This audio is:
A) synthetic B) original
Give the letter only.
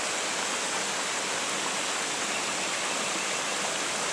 B